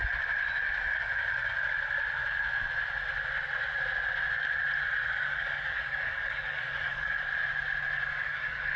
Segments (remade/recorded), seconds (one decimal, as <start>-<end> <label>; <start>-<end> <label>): 0.0-5.2 recorded; 5.2-7.3 remade; 7.3-8.2 recorded; 8.2-8.8 remade